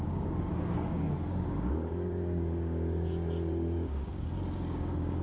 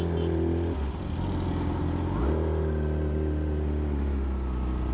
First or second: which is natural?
second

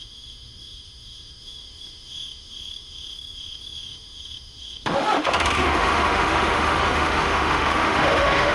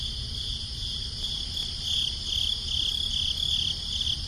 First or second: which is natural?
second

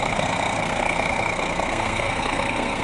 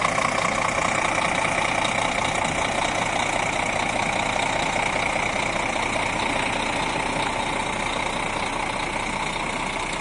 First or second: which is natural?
second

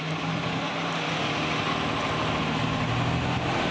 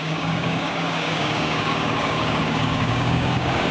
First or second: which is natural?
first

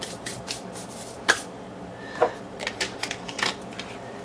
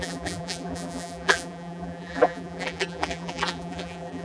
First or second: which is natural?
first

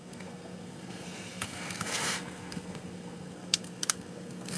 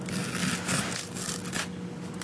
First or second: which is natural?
second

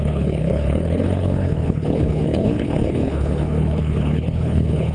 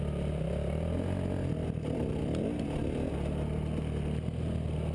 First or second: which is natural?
second